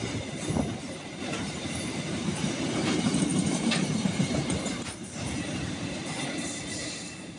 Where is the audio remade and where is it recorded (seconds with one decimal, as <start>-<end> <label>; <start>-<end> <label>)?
0.0-7.4 remade